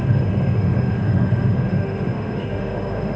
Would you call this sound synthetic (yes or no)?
yes